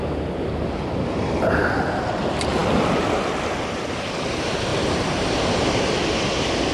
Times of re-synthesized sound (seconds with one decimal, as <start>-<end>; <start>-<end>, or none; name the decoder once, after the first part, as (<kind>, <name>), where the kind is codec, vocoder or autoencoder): 4.7-5.8 (vocoder, BigVGAN v2)